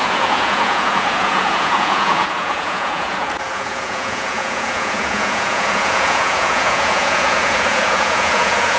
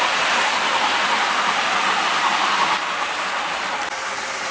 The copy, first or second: first